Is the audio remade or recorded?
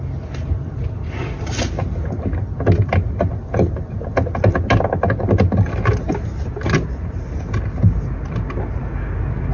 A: recorded